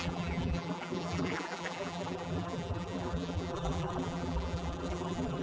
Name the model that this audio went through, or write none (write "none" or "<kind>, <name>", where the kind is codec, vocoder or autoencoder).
vocoder, BigVGAN v2